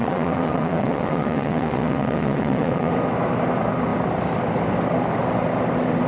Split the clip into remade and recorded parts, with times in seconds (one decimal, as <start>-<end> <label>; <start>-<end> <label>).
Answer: 0.0-2.9 remade; 2.9-6.1 recorded